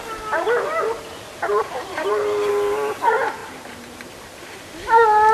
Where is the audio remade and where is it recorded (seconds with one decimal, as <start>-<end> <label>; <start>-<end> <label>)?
0.0-1.5 recorded; 1.5-2.5 remade; 2.5-3.4 recorded; 3.4-4.1 remade; 4.1-5.3 recorded